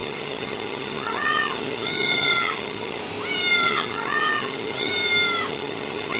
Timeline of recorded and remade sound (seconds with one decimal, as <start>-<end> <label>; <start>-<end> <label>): 0.0-3.0 remade; 3.0-3.6 recorded; 3.6-4.9 remade; 4.9-5.5 recorded; 5.5-6.2 remade

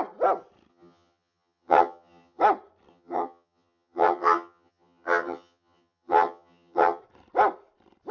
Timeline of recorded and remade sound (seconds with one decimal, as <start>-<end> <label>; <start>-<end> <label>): 0.0-0.7 recorded; 0.7-2.4 remade; 2.4-2.9 recorded; 2.9-7.0 remade; 7.0-8.1 recorded

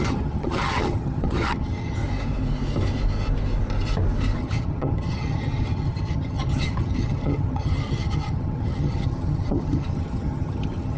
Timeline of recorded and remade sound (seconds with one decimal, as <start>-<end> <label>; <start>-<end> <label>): 0.0-2.0 remade; 2.0-4.4 recorded; 4.4-11.0 remade

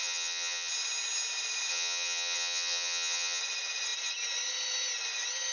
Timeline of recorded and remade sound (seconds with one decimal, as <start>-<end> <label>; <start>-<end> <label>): 0.0-0.7 remade; 0.7-1.7 recorded; 1.7-3.4 remade; 3.4-5.5 recorded

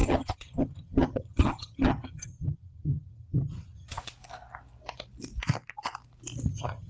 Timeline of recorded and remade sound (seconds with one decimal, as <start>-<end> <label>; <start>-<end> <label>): 0.0-4.0 remade; 4.0-6.5 recorded; 6.5-6.9 remade